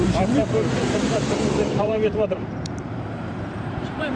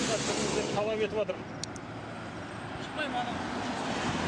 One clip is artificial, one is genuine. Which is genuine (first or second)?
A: second